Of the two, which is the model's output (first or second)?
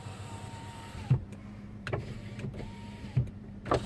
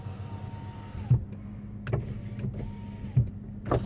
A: first